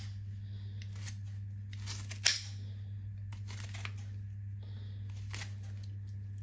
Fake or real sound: real